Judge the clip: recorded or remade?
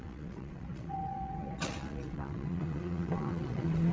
remade